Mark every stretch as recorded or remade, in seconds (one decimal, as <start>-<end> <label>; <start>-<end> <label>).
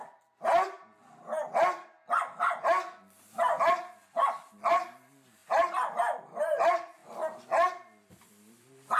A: 0.0-4.7 recorded; 4.7-7.0 remade; 7.0-8.1 recorded; 8.1-9.0 remade